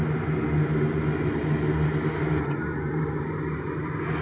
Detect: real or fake real